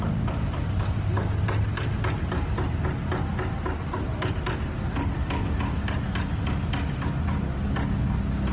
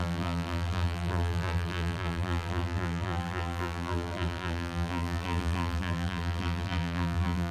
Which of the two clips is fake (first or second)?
second